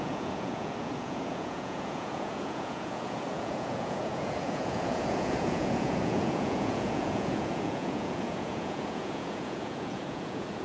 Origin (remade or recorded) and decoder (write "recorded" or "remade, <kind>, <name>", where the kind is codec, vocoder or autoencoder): remade, vocoder, Vocos